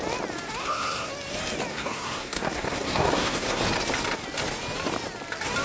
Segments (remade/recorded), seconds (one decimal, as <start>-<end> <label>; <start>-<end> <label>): 0.0-0.6 recorded; 0.6-1.1 remade; 1.1-1.7 recorded; 1.7-3.6 remade; 3.6-5.6 recorded